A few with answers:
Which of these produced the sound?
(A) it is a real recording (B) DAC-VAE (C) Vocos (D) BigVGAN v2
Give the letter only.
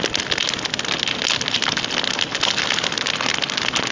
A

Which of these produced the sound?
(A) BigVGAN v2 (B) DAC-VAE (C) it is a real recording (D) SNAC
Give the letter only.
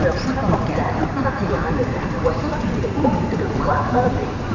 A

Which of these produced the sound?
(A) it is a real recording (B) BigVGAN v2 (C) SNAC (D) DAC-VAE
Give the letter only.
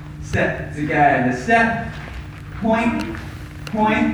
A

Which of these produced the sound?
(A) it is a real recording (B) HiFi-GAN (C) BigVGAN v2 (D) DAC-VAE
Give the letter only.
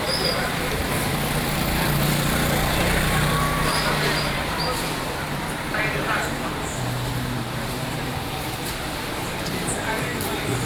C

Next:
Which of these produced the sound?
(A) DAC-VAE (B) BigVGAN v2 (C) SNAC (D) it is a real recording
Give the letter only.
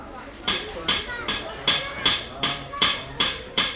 B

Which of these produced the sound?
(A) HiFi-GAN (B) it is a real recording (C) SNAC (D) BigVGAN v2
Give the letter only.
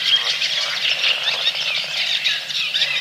D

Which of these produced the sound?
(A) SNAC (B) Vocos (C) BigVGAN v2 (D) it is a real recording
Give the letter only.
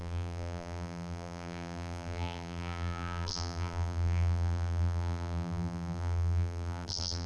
C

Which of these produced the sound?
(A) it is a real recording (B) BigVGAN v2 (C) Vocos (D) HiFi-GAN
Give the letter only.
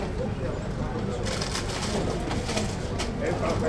A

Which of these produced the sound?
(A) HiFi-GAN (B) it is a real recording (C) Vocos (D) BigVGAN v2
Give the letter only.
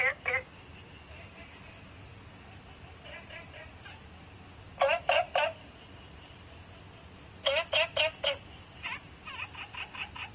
B